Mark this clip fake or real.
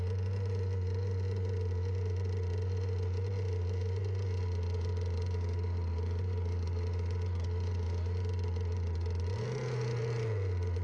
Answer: real